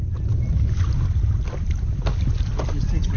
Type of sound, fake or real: real